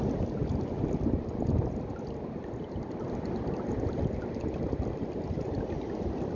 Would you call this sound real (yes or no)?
yes